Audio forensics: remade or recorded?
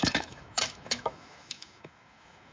remade